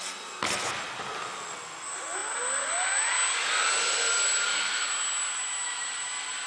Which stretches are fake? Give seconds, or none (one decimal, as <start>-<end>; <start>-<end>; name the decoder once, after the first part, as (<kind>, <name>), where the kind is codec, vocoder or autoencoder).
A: none